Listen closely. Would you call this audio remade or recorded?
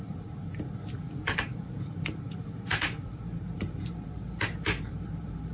remade